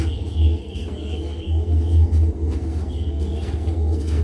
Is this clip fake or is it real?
fake